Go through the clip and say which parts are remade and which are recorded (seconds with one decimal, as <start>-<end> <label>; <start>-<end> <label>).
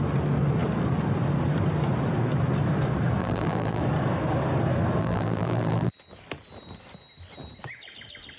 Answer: 0.0-3.2 recorded; 3.2-3.8 remade; 3.8-5.0 recorded; 5.0-5.9 remade; 5.9-8.4 recorded